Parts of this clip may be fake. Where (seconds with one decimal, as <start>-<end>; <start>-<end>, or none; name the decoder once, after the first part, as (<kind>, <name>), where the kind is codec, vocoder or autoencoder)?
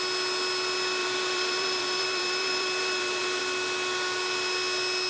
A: 1.0-3.4 (vocoder, BigVGAN v2)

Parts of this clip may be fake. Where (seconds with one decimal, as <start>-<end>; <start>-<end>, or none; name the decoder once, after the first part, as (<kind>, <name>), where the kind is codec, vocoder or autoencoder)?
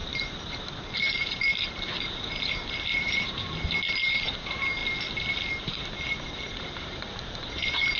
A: 0.0-4.8 (vocoder, BigVGAN v2); 5.6-8.0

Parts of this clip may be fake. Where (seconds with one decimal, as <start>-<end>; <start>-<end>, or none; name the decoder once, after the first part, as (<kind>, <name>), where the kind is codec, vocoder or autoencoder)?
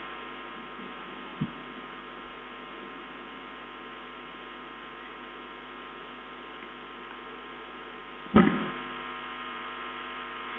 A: 0.0-1.3 (vocoder, BigVGAN v2); 6.0-10.6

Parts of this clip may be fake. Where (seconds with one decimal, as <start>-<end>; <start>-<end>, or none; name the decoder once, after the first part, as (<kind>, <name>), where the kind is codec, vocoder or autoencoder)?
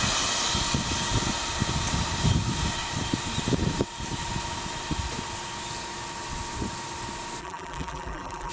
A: 7.4-8.5 (vocoder, BigVGAN v2)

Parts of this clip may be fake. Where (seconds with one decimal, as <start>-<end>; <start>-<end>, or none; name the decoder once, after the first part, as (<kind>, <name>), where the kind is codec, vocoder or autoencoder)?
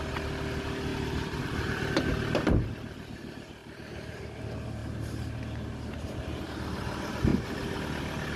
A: 0.9-1.8 (vocoder, BigVGAN v2); 3.6-4.2; 7.3-7.8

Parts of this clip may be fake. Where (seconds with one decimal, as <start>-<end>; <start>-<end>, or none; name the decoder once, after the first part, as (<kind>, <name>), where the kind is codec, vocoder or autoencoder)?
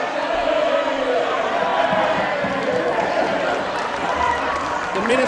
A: 0.0-5.3 (vocoder, BigVGAN v2)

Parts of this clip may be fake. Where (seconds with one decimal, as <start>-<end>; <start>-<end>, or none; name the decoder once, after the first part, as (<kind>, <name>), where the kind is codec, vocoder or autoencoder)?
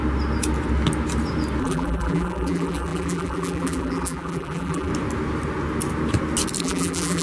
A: 1.6-4.9 (vocoder, BigVGAN v2); 6.6-7.2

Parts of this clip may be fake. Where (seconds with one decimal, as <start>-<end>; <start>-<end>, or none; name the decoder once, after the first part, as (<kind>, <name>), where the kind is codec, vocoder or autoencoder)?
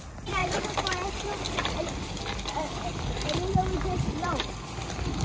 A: 0.4-2.2 (vocoder, BigVGAN v2); 3.6-4.3